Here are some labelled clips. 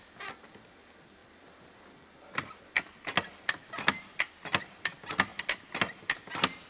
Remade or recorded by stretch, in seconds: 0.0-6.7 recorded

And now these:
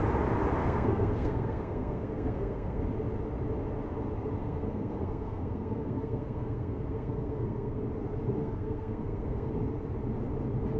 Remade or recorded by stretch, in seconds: 0.0-0.6 recorded; 0.6-2.8 remade; 2.8-4.4 recorded; 4.4-7.8 remade; 7.8-8.4 recorded; 8.4-9.5 remade; 9.5-10.8 recorded

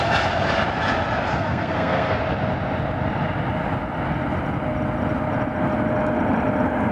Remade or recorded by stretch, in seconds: 0.0-1.3 recorded; 1.3-2.2 remade; 2.2-6.9 recorded

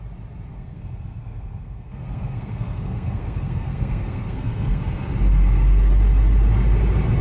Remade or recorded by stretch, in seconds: 0.0-0.5 recorded; 0.5-4.8 remade; 4.8-5.3 recorded; 5.3-5.9 remade; 5.9-7.2 recorded

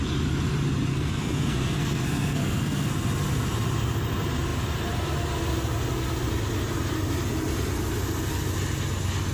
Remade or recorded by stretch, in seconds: 0.0-0.9 recorded; 0.9-2.9 remade; 2.9-9.3 recorded

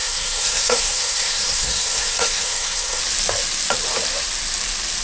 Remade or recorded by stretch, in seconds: 0.0-3.0 remade; 3.0-5.0 recorded

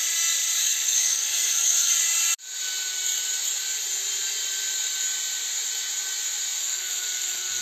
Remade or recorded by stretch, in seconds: 0.0-0.6 recorded; 0.6-1.9 remade; 1.9-6.6 recorded; 6.6-7.6 remade